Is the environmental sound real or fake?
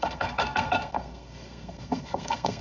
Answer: fake